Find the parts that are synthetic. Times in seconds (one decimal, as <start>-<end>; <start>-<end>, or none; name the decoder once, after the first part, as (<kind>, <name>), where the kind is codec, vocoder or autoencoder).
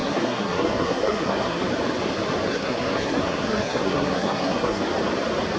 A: 0.0-1.6 (codec, SNAC); 2.5-4.8